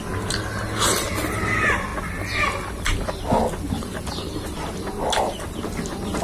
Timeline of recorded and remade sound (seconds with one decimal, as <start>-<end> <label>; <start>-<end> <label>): 0.0-6.2 recorded